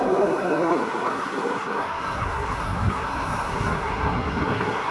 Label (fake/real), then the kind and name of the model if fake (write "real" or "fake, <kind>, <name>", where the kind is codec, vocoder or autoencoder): fake, codec, SNAC